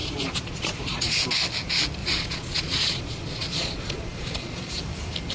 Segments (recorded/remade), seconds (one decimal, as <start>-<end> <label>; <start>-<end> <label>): 0.0-1.2 remade; 1.2-2.0 recorded; 2.0-4.7 remade; 4.7-5.3 recorded